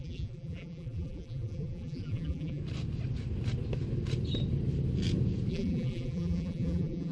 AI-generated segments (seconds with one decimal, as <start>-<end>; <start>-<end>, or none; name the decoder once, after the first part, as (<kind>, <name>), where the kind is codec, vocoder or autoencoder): 0.0-2.6 (vocoder, BigVGAN v2); 5.5-7.1